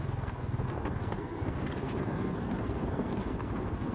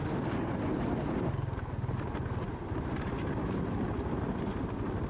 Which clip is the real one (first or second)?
second